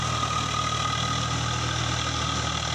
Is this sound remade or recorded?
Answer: recorded